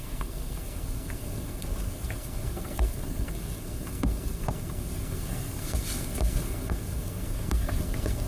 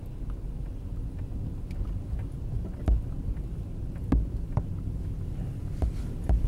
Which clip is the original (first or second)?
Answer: second